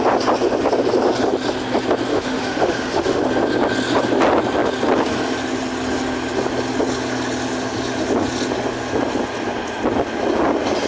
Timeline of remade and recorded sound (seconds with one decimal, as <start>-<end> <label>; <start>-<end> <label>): 0.0-2.1 recorded; 2.1-3.2 remade; 3.2-10.9 recorded